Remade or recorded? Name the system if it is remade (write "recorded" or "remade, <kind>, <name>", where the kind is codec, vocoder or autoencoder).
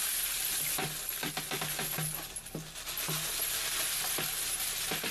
recorded